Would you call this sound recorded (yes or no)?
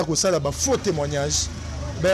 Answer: yes